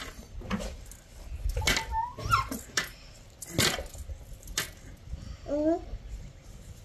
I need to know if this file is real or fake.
real